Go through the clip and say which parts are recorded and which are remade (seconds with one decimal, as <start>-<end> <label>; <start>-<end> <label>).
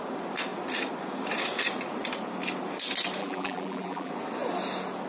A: 0.0-3.2 recorded; 3.2-4.1 remade; 4.1-5.1 recorded